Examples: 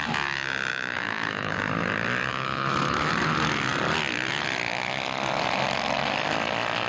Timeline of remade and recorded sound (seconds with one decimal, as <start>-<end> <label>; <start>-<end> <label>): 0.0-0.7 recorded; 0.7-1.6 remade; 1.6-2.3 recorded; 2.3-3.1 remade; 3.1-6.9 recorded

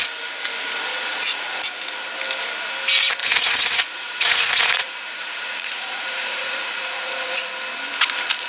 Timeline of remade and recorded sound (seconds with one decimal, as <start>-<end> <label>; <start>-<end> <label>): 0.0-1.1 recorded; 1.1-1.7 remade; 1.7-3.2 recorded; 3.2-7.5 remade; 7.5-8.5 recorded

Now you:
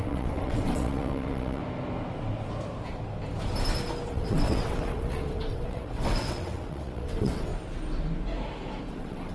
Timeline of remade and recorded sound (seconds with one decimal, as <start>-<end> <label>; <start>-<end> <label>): 0.0-1.6 remade; 1.6-4.1 recorded; 4.1-7.5 remade; 7.5-8.9 recorded; 8.9-9.3 remade

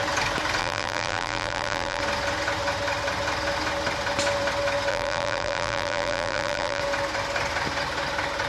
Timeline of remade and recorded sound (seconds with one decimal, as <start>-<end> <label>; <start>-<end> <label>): 0.0-0.6 recorded; 0.6-2.0 remade; 2.0-4.9 recorded; 4.9-6.8 remade; 6.8-8.5 recorded